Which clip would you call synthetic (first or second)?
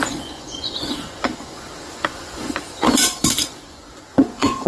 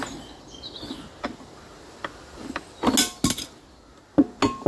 first